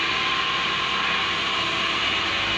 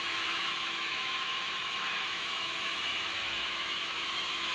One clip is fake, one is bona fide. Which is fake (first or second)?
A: second